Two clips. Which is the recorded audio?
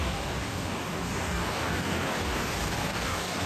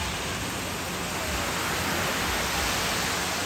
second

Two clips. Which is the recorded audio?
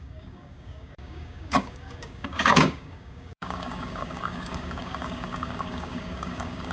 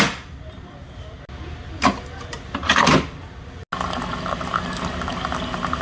second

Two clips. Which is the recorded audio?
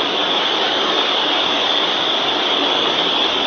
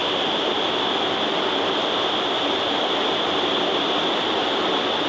second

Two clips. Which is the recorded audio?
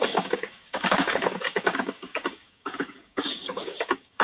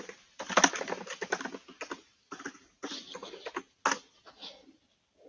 second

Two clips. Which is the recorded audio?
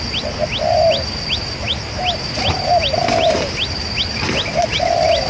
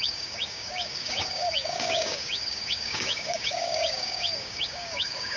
first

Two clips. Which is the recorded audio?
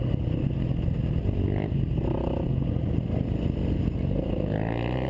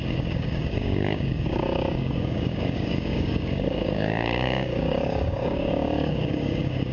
first